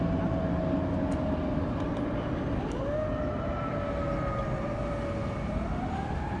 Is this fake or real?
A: real